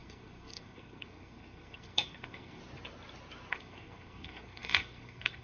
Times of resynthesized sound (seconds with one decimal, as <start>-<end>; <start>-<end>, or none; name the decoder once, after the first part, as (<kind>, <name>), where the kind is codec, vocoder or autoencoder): 0.0-2.6 (codec, SNAC); 3.5-5.4